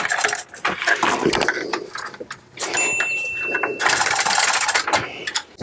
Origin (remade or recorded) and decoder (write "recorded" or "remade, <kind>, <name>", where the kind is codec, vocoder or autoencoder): recorded